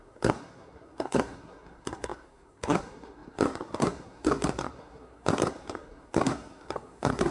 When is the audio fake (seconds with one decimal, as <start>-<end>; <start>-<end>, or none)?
0.0-7.3